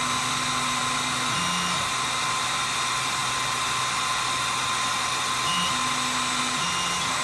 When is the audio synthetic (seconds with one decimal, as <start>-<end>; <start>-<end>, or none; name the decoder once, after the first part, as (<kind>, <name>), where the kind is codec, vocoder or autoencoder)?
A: none